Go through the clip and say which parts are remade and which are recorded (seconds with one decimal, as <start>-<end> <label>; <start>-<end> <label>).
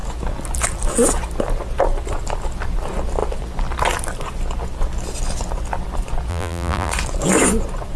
0.0-6.3 recorded; 6.3-6.9 remade; 6.9-8.0 recorded